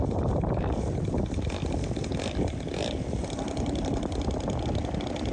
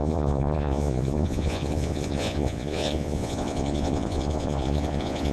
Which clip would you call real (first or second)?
first